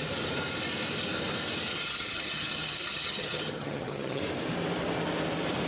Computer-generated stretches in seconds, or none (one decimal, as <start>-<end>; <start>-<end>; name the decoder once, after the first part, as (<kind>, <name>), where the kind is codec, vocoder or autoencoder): 1.7-4.2 (vocoder, HiFi-GAN)